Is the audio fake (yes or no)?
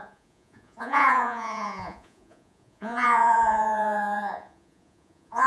yes